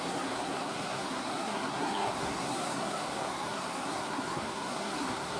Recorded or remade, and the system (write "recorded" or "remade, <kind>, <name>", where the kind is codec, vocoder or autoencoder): remade, codec, SNAC